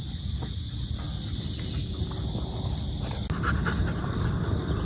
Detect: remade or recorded recorded